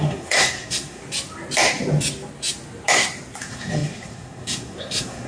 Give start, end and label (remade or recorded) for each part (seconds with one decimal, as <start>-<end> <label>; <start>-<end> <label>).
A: 0.0-1.0 remade; 1.0-3.4 recorded; 3.4-5.3 remade